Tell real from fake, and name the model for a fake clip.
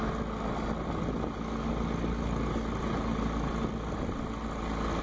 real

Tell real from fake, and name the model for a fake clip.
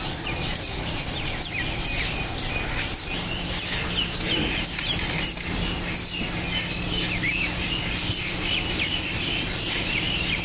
real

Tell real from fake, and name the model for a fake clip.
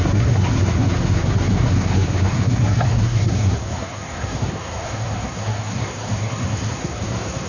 fake, codec, SNAC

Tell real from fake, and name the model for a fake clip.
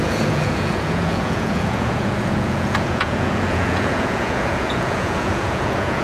fake, vocoder, Vocos